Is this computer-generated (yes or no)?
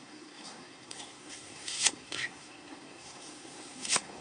yes